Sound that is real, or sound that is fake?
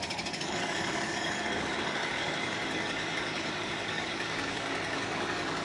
fake